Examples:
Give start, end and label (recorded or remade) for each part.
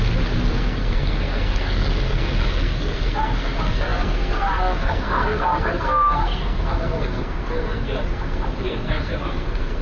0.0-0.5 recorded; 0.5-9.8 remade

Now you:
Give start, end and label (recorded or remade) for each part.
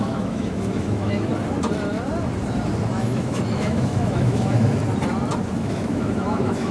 0.0-1.3 remade; 1.3-2.9 recorded; 2.9-4.8 remade; 4.8-5.5 recorded; 5.5-6.7 remade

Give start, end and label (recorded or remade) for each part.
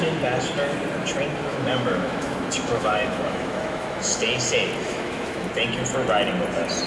0.0-1.5 recorded; 1.5-4.2 remade; 4.2-4.8 recorded; 4.8-5.5 remade; 5.5-6.9 recorded